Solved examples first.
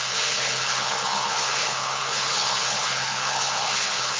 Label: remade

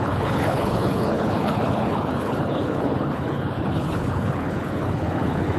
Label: remade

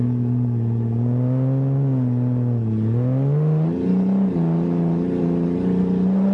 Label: recorded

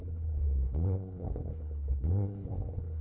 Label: remade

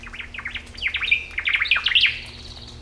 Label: recorded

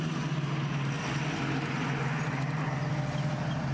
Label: recorded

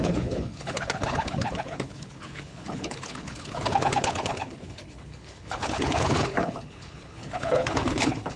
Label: remade